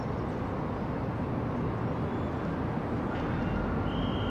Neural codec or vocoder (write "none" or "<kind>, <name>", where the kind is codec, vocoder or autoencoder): none